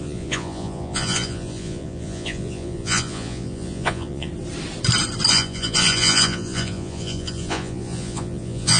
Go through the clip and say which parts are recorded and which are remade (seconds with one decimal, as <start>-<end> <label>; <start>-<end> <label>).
0.0-4.3 remade; 4.3-5.3 recorded; 5.3-8.8 remade